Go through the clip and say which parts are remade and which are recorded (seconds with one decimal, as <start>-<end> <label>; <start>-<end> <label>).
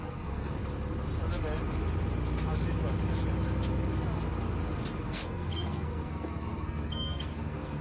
0.0-0.6 remade; 0.6-5.0 recorded; 5.0-7.8 remade